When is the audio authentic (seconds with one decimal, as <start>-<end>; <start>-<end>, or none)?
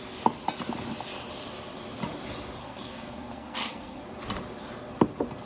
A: 0.0-2.6; 4.0-5.5